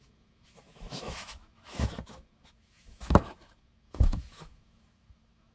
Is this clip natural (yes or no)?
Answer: no